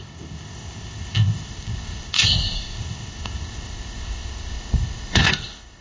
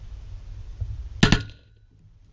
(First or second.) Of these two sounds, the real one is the second